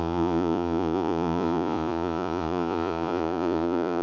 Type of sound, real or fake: fake